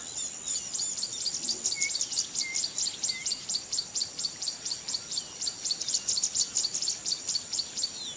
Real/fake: real